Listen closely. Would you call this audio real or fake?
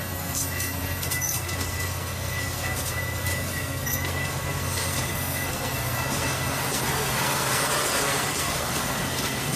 fake